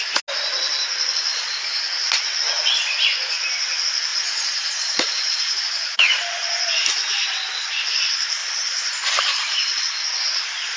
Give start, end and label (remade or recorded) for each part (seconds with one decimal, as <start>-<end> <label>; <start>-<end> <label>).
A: 0.0-1.3 recorded; 1.3-1.9 remade; 1.9-4.1 recorded; 4.1-5.6 remade; 5.6-8.4 recorded; 8.4-9.8 remade; 9.8-10.8 recorded